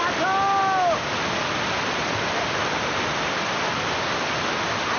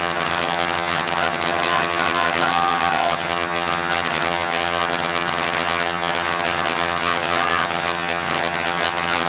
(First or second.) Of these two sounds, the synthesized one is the second